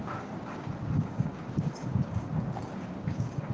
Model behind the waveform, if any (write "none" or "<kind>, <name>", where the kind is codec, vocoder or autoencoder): codec, DAC